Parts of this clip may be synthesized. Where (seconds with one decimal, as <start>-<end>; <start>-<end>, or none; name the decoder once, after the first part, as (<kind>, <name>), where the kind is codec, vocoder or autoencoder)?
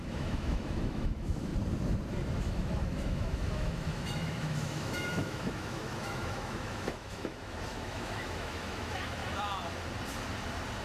0.0-1.5 (autoencoder, DAC-VAE); 2.4-9.2